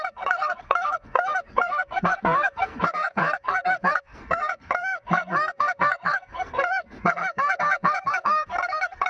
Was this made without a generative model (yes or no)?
no